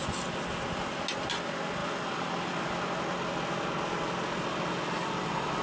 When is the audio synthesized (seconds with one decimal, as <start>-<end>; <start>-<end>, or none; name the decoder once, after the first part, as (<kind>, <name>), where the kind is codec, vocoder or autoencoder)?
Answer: none